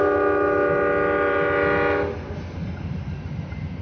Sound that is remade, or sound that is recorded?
recorded